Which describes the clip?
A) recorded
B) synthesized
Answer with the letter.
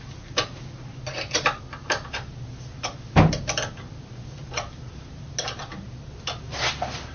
A